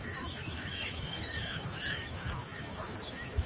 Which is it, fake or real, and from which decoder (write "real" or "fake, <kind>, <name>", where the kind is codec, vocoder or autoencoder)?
fake, autoencoder, DAC-VAE